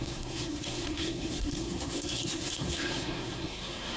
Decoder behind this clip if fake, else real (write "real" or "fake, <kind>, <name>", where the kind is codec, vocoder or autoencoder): fake, codec, SNAC